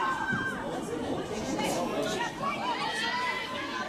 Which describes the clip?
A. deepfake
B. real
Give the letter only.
B